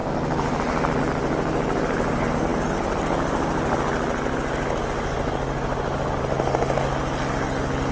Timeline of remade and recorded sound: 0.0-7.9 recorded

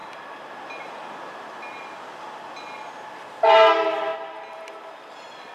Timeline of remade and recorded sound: 0.0-5.5 recorded

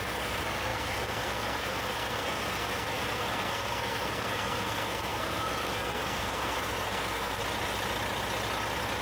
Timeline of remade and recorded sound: 0.0-7.4 remade; 7.4-9.0 recorded

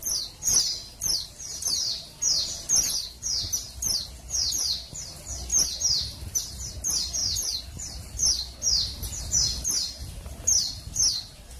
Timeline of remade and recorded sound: 0.0-5.5 recorded; 5.5-6.7 remade; 6.7-10.0 recorded; 10.0-10.5 remade; 10.5-11.6 recorded